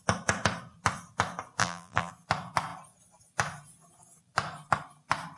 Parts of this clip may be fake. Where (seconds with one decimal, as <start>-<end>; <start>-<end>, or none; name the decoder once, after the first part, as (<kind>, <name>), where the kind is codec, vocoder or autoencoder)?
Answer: 1.6-2.1 (vocoder, BigVGAN v2)